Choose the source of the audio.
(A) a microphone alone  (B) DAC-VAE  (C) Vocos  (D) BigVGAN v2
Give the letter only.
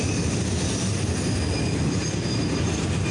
A